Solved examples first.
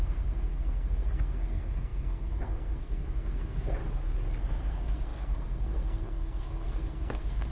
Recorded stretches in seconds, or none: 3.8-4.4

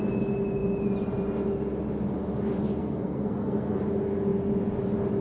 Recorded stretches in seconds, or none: 0.0-2.8; 3.8-5.2

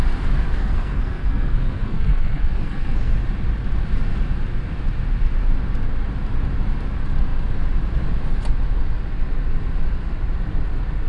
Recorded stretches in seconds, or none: 0.0-0.5; 3.1-11.1

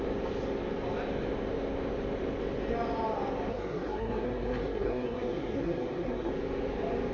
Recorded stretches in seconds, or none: 0.0-3.5; 6.3-7.1

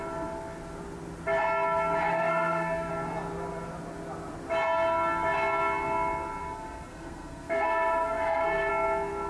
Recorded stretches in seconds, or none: 0.0-2.1; 2.9-6.4; 8.7-9.3

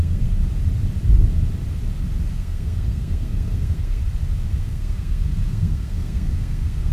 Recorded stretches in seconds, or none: 0.4-2.3; 4.0-4.5